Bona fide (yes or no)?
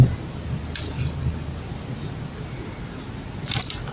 yes